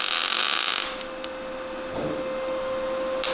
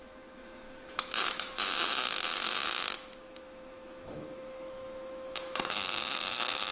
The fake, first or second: second